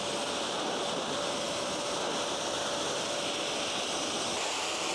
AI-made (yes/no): no